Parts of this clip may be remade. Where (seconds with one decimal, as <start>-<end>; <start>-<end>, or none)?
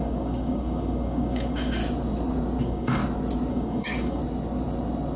0.0-1.8; 2.6-3.0; 3.5-4.2